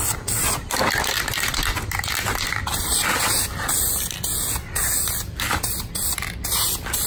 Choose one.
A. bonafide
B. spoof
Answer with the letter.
A